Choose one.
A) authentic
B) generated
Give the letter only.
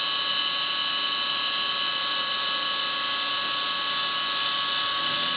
A